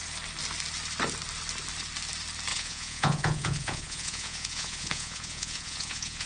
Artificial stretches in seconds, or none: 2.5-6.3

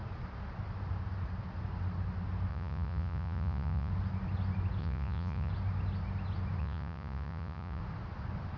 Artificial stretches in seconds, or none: 2.5-3.9; 4.8-5.5; 6.6-7.8